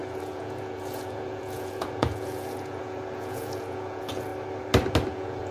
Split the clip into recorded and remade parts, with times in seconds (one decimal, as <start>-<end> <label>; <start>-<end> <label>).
0.0-4.3 remade; 4.3-5.1 recorded; 5.1-5.5 remade